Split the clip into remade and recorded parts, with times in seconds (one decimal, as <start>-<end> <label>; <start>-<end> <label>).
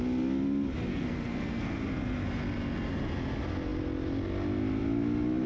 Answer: 0.0-0.9 recorded; 0.9-1.8 remade; 1.8-5.5 recorded